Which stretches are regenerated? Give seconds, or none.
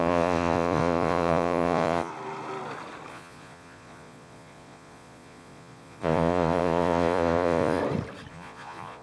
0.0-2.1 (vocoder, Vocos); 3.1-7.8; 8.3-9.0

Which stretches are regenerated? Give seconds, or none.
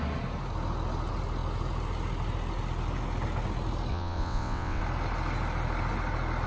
3.9-4.8 (vocoder, WaveNeXt)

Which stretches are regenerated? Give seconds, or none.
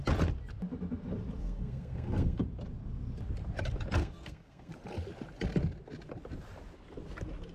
1.4-2.4 (codec, SNAC); 4.0-4.7